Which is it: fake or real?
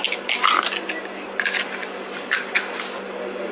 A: real